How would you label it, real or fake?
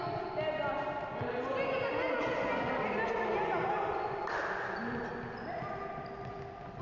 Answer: real